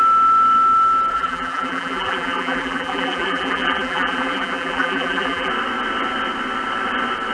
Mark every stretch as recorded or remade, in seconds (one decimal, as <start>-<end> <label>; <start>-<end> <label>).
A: 0.0-1.1 recorded; 1.1-5.5 remade; 5.5-7.3 recorded